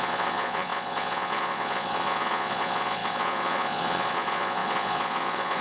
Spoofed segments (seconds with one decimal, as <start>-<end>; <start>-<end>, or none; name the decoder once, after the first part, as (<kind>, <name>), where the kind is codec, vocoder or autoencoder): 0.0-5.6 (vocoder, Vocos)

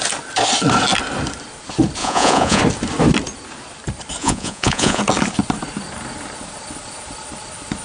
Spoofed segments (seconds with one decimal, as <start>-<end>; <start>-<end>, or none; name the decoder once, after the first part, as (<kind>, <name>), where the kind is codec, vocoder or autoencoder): 2.0-2.6 (vocoder, Vocos); 4.2-5.0

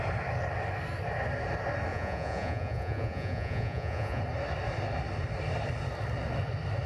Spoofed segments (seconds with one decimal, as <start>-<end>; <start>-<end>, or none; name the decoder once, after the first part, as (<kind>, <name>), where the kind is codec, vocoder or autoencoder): 1.9-4.2 (vocoder, Vocos)

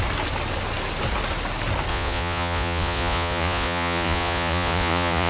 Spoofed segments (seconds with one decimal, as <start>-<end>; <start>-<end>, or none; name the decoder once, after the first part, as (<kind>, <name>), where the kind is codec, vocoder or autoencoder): 1.9-5.3 (vocoder, Vocos)

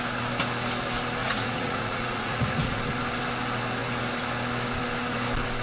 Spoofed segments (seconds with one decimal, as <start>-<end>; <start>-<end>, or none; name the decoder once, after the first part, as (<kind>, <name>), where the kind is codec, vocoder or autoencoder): 1.2-2.8 (vocoder, Vocos)

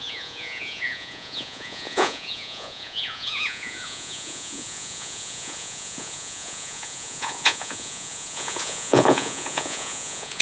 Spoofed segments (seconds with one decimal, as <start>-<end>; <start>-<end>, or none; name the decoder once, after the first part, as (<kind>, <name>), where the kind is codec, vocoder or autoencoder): 0.0-10.4 (vocoder, Vocos)